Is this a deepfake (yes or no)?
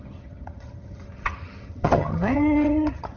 yes